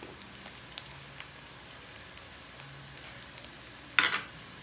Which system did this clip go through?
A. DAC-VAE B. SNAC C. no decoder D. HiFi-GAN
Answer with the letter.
C